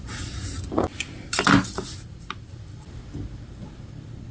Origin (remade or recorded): recorded